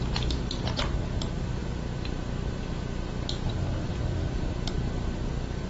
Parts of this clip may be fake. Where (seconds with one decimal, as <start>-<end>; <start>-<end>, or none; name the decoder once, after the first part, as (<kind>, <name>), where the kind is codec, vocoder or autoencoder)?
none